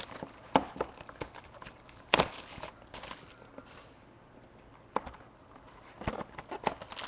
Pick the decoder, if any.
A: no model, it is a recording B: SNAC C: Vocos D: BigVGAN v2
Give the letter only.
A